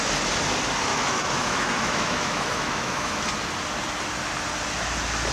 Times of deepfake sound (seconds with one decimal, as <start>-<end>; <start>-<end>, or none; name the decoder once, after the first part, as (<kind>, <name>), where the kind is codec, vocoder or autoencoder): 0.9-3.3 (autoencoder, DAC-VAE)